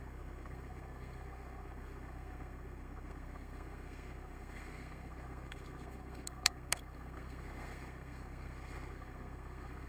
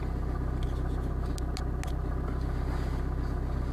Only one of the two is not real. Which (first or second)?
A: first